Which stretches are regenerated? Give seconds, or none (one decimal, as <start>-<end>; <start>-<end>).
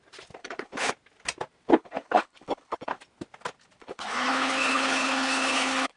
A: 0.4-0.9; 1.7-3.0; 3.8-6.0